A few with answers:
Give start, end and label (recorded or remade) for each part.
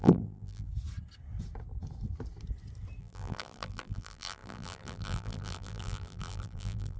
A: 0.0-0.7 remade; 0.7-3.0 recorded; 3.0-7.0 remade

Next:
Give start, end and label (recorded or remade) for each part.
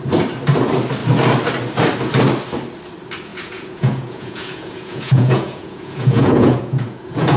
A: 0.0-3.3 recorded; 3.3-7.4 remade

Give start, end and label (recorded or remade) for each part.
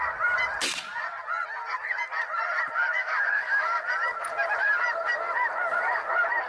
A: 0.0-3.0 recorded; 3.0-3.8 remade; 3.8-6.5 recorded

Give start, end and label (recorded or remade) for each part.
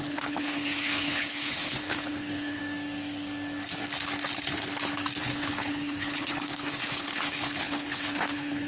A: 0.0-2.6 remade; 2.6-5.2 recorded; 5.2-8.7 remade